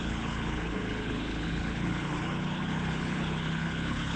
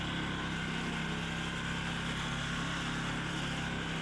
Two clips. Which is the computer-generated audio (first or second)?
first